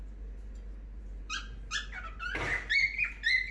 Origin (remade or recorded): recorded